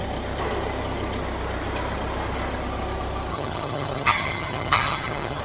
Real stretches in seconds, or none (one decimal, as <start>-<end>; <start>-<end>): 0.0-3.3

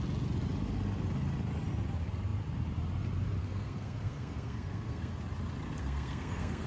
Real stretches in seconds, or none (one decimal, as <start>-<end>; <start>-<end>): 0.0-3.4; 5.1-5.8

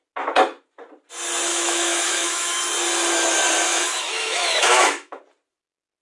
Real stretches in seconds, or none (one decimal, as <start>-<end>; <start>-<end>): 0.0-1.5; 2.6-3.7; 5.2-6.0